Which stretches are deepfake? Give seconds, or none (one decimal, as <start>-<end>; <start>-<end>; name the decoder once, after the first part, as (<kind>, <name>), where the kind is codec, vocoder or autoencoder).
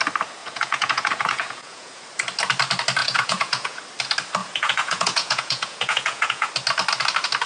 0.4-2.0 (vocoder, Vocos); 3.0-3.8; 4.4-6.5